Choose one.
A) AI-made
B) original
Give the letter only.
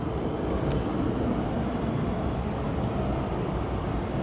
B